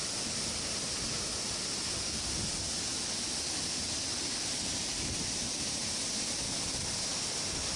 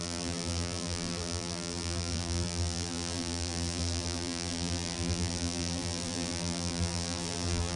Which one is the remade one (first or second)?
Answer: second